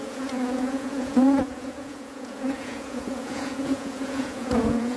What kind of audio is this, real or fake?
fake